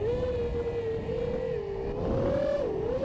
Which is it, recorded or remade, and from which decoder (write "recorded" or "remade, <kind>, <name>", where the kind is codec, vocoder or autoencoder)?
recorded